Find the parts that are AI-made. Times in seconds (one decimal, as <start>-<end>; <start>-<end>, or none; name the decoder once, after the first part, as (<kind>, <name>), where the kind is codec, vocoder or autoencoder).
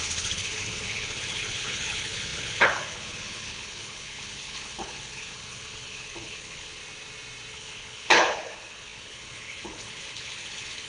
0.0-6.8 (codec, HILCodec); 7.5-10.9